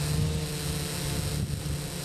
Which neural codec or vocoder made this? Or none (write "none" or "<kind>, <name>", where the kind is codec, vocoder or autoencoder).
none